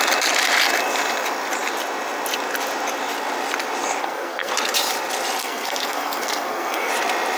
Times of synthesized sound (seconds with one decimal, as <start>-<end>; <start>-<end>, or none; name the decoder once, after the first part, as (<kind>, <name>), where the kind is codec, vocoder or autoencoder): 4.0-4.5 (codec, SNAC); 5.4-6.9